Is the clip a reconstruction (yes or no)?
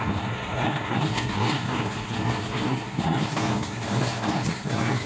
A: yes